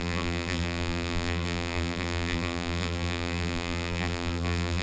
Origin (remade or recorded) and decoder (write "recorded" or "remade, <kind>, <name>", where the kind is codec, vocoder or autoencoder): remade, vocoder, BigVGAN v2